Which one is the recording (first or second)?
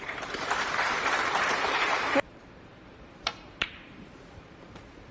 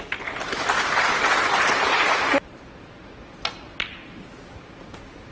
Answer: second